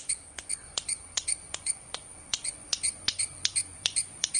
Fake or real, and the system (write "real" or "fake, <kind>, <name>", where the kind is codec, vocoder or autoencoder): fake, vocoder, Vocos